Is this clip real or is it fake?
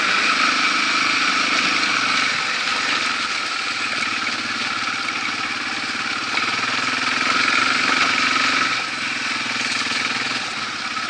real